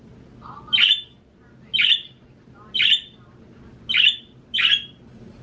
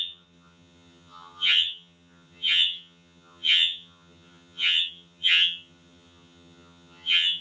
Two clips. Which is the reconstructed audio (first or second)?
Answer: second